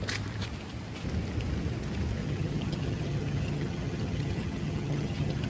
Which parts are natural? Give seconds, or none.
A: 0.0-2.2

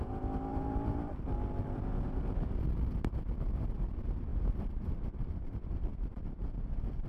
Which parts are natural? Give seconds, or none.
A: 0.0-0.5; 1.8-4.3

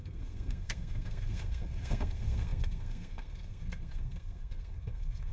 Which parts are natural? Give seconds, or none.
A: none

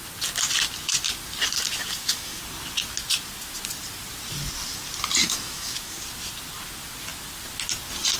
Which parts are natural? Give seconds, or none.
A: 0.0-1.8; 2.4-5.2; 6.0-8.2

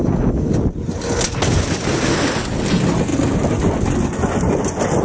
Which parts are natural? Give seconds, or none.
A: 0.9-3.1; 3.7-5.0